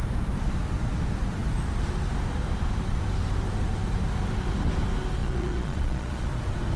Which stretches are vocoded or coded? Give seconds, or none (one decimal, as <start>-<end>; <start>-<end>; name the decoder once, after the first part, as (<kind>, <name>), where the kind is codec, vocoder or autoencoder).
5.2-6.3 (vocoder, Vocos)